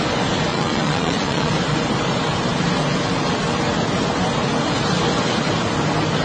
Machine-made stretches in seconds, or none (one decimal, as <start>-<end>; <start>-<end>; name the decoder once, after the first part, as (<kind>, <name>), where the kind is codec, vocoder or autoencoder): 0.5-1.5 (vocoder, Vocos)